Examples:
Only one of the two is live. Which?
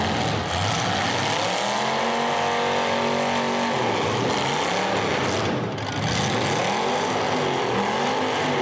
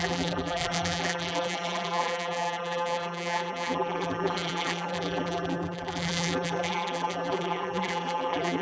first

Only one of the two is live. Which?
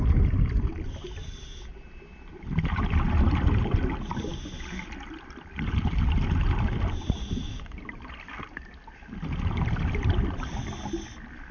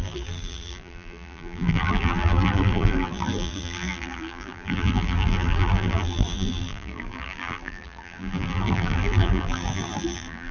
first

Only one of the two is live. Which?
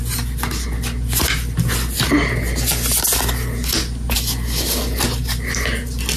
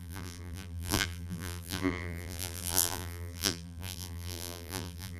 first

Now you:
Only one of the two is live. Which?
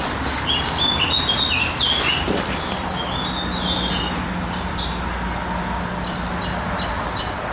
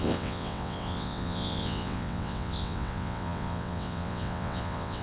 first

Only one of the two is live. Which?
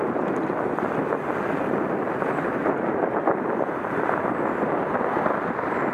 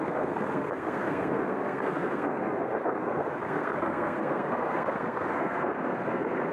first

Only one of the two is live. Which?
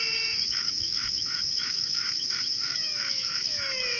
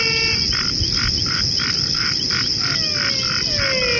second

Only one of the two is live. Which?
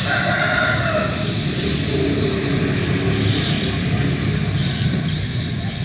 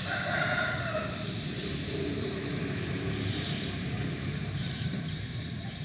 first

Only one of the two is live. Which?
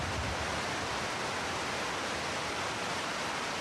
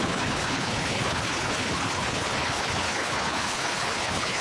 first